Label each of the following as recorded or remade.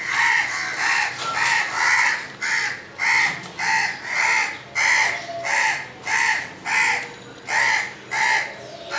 recorded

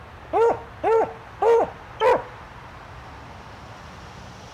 recorded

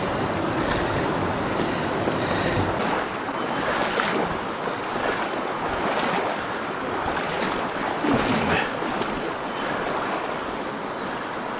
recorded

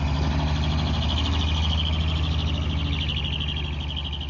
recorded